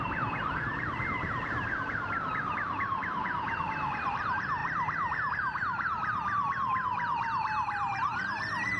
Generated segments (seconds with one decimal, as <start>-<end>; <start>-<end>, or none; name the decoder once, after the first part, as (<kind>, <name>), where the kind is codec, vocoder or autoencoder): 0.0-8.8 (vocoder, BigVGAN v2)